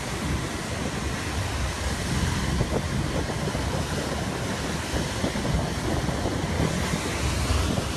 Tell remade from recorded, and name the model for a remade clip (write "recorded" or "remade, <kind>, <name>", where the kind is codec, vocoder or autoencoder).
recorded